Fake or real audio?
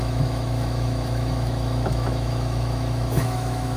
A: fake